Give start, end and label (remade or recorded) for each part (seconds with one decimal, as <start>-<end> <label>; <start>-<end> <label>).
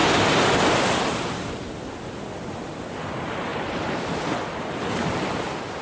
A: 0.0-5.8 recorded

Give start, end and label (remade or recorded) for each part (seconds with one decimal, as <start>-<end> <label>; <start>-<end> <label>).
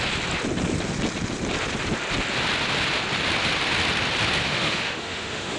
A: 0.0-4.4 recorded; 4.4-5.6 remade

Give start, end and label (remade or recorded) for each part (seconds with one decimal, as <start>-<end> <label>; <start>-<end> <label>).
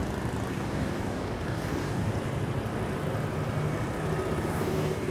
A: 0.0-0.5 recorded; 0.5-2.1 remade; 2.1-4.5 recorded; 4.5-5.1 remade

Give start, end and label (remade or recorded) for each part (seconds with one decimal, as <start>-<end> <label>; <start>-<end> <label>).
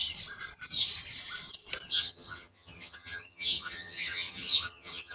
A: 0.0-1.9 recorded; 1.9-5.1 remade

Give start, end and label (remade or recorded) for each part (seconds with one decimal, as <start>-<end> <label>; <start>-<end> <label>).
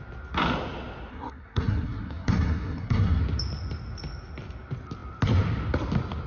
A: 0.0-1.1 recorded; 1.1-3.2 remade; 3.2-6.3 recorded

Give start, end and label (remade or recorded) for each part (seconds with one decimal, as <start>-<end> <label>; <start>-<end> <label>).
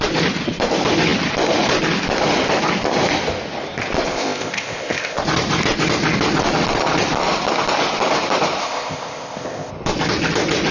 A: 0.0-4.1 recorded; 4.1-5.2 remade; 5.2-8.6 recorded; 8.6-9.7 remade; 9.7-10.7 recorded